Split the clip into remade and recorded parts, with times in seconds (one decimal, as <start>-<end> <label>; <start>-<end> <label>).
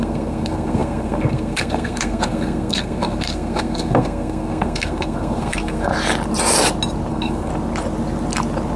0.0-5.9 remade; 5.9-7.1 recorded; 7.1-7.5 remade; 7.5-8.8 recorded